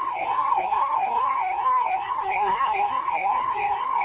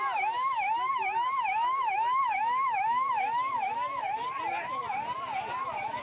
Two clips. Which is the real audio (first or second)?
second